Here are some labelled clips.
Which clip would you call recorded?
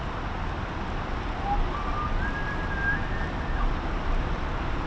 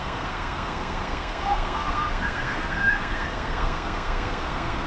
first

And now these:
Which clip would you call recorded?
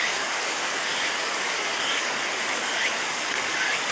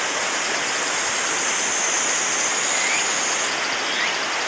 second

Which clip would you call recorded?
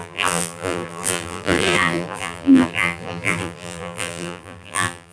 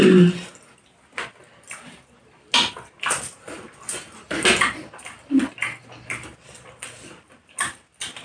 second